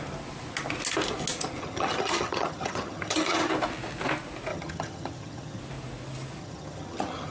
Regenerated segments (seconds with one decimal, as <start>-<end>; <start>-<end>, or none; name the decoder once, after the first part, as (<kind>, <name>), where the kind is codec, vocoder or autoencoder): 1.6-3.5 (vocoder, HiFi-GAN); 4.5-5.6; 6.4-7.3